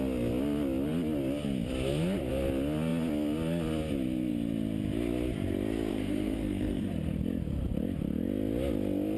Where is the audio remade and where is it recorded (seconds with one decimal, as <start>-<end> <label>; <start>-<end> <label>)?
0.0-5.9 recorded; 5.9-6.9 remade; 6.9-9.2 recorded